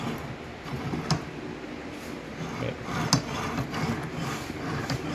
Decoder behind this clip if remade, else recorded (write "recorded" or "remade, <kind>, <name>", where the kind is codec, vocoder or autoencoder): recorded